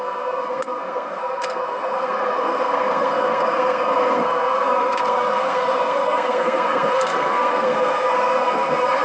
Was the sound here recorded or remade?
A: remade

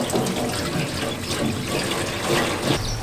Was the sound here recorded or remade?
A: recorded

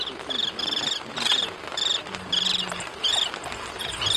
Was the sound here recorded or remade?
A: recorded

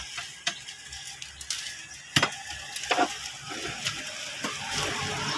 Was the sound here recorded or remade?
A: recorded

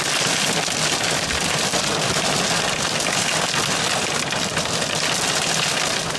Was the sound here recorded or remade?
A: recorded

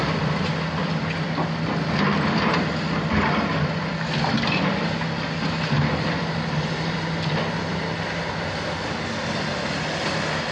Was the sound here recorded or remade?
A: recorded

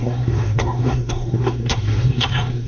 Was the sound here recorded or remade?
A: remade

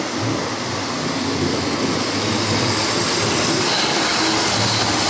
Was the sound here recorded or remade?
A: recorded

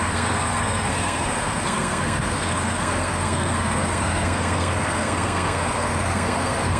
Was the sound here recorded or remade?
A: remade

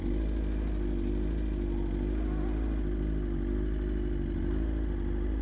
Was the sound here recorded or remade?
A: recorded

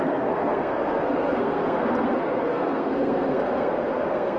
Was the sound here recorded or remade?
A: remade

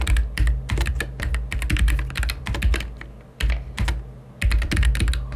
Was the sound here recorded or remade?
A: recorded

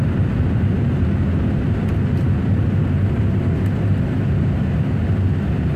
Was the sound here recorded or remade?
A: recorded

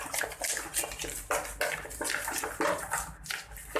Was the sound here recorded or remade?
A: recorded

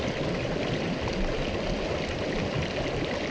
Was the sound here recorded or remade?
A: recorded